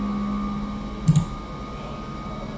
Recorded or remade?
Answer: recorded